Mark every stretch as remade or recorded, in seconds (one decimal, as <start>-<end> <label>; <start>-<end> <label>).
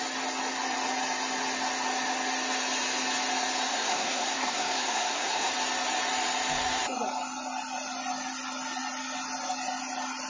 0.0-3.7 recorded; 3.7-5.5 remade; 5.5-10.3 recorded